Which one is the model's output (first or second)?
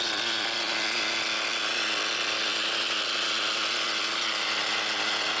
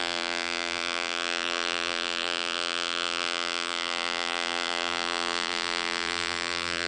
second